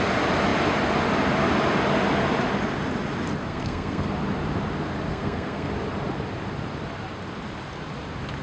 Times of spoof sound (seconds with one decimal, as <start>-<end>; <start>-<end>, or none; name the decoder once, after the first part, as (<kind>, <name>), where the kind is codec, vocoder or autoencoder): 3.5-4.1 (codec, SNAC); 5.1-5.7